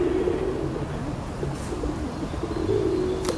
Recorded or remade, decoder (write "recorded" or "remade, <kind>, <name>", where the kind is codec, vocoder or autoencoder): recorded